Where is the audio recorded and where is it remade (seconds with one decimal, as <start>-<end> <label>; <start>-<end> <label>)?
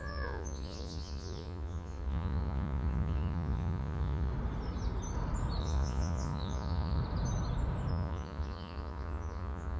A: 0.0-4.3 remade; 4.3-5.6 recorded; 5.6-7.0 remade; 7.0-7.9 recorded; 7.9-9.8 remade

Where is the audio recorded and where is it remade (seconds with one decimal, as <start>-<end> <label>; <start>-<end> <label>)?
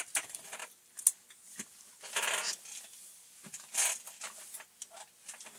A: 0.0-0.6 remade; 0.6-2.1 recorded; 2.1-3.2 remade; 3.2-4.4 recorded; 4.4-5.6 remade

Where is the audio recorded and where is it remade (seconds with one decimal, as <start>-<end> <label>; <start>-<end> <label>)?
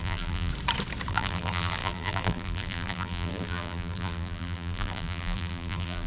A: 0.0-0.5 remade; 0.5-1.1 recorded; 1.1-6.1 remade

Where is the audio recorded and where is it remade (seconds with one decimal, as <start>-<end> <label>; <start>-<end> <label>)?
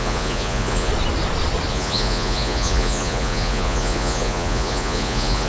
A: 0.0-0.9 remade; 0.9-1.7 recorded; 1.7-5.5 remade